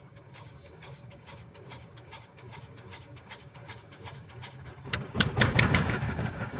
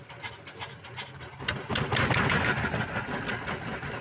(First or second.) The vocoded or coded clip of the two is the first